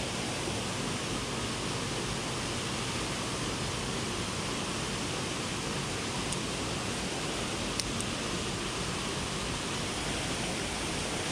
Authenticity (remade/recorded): recorded